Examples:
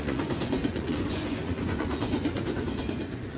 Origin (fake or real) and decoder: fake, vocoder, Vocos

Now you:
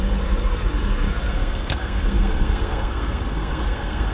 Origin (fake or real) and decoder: fake, codec, SNAC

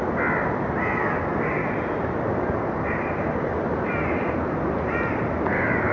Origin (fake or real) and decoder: real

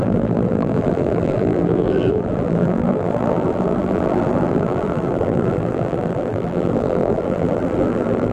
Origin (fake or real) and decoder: fake, vocoder, BigVGAN v2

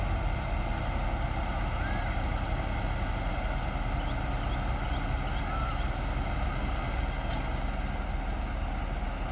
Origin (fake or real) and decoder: real